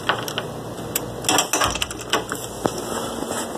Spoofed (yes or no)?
no